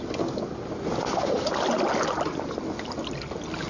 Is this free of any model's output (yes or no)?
yes